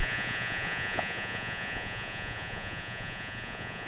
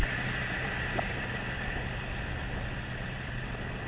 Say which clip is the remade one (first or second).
first